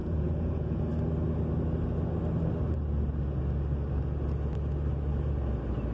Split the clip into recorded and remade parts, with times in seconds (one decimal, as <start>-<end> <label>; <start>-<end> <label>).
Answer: 0.0-0.8 remade; 0.8-5.9 recorded